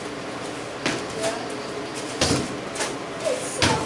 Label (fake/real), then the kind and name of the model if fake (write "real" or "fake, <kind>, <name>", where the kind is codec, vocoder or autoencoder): real